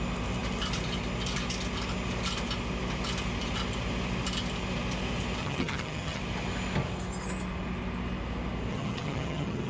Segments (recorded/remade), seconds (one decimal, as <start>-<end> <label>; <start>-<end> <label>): 0.0-5.4 recorded; 5.4-6.2 remade; 6.2-8.7 recorded; 8.7-9.7 remade

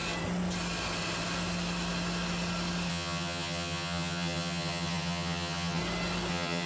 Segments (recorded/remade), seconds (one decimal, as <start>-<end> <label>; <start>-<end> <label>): 0.0-2.9 recorded; 2.9-5.8 remade; 5.8-6.3 recorded; 6.3-6.7 remade

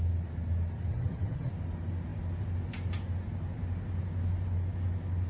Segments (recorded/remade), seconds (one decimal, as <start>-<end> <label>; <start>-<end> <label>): 0.0-0.9 recorded; 0.9-1.5 remade; 1.5-5.3 recorded